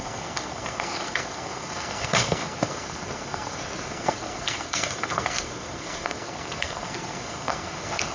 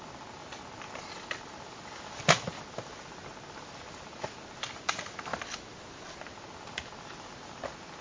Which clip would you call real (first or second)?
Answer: second